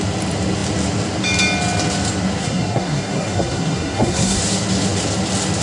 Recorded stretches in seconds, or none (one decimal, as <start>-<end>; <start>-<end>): 0.0-2.4; 4.4-5.6